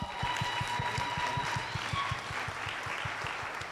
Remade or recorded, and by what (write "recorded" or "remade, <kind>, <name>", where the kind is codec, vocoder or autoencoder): recorded